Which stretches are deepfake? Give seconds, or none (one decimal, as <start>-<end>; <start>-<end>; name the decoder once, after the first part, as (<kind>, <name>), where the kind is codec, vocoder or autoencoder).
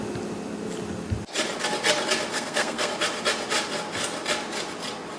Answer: 2.3-2.9 (codec, SNAC)